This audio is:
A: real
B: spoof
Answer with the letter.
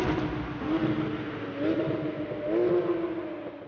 A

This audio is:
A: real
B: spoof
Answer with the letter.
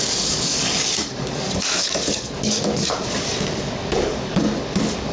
B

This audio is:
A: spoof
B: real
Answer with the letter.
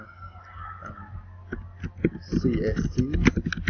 B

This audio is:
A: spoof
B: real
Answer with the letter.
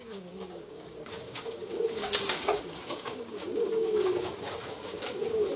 A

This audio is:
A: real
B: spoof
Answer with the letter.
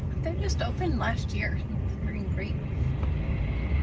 A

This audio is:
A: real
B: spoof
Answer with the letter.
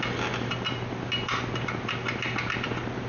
A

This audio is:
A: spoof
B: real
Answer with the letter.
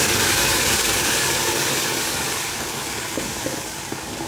A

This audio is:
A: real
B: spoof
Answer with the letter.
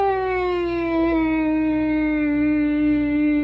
B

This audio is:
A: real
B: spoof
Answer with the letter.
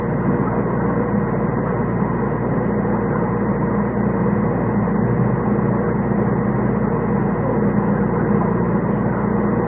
A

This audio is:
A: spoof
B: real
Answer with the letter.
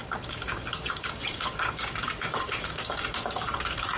A